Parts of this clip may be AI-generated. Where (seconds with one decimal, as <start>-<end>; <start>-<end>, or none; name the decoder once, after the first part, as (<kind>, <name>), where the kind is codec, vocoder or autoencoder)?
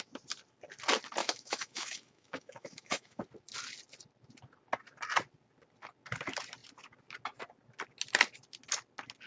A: 1.2-3.2 (autoencoder, DAC-VAE)